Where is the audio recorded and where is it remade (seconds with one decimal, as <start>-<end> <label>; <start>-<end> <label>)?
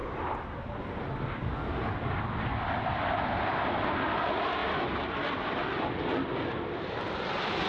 0.0-7.7 recorded